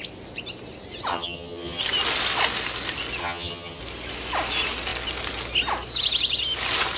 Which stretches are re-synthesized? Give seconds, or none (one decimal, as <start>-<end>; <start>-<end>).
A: 1.1-1.8; 3.2-3.8